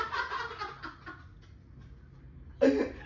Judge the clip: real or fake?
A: real